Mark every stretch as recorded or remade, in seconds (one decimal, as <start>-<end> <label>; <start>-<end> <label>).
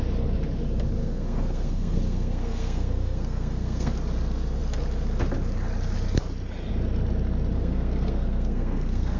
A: 0.0-1.0 recorded; 1.0-3.9 remade; 3.9-7.5 recorded; 7.5-9.2 remade